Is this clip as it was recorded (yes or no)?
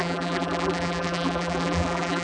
no